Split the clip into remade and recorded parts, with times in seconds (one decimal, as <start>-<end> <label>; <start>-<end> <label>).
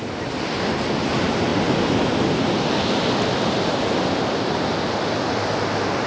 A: 0.0-6.1 recorded